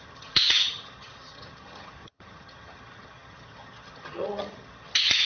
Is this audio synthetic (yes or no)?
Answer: yes